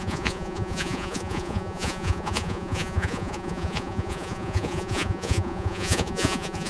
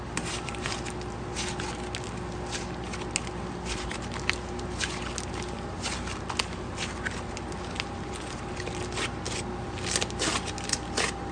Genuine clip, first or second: second